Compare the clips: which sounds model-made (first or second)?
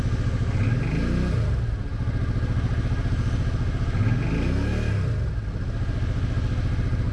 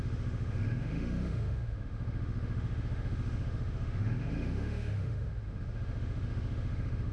second